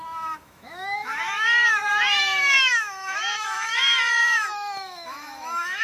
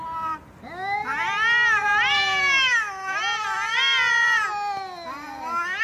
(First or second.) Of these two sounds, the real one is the second